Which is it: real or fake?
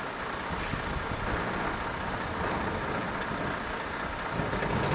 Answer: real